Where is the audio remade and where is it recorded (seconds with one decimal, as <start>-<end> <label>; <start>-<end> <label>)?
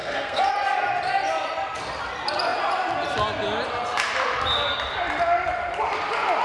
0.0-0.5 remade; 0.5-6.4 recorded